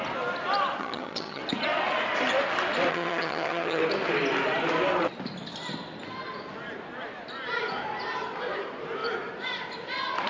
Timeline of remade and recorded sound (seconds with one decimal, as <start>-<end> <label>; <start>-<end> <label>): 0.0-0.8 recorded; 0.8-1.4 remade; 1.4-2.9 recorded; 2.9-3.8 remade; 3.8-10.3 recorded